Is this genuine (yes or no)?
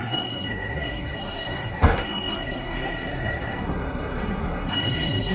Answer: no